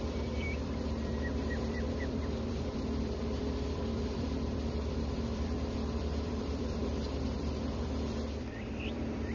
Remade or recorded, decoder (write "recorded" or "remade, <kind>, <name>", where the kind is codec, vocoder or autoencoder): remade, vocoder, BigVGAN v2